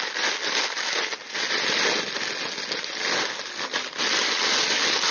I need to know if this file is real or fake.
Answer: real